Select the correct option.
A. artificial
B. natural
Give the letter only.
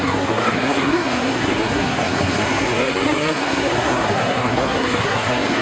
A